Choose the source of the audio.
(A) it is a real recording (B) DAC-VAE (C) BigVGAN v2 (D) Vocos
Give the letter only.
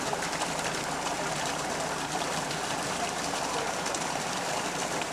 C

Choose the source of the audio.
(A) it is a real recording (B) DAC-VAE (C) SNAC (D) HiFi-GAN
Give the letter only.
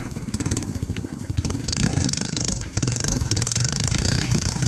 C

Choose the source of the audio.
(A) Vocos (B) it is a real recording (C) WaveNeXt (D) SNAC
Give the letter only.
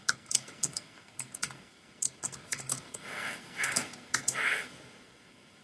D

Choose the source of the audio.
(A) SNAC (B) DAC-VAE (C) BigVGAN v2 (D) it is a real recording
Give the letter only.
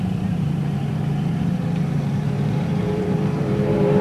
C